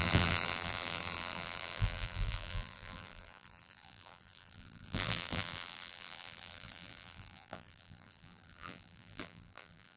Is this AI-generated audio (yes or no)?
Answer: yes